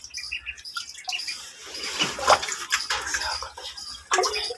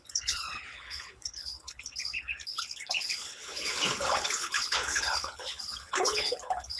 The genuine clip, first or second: first